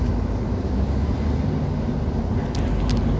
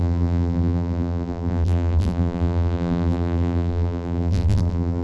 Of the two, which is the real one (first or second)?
first